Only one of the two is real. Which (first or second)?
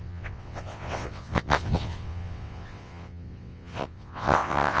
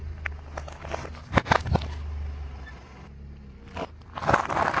second